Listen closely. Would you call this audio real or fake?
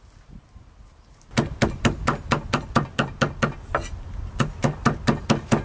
real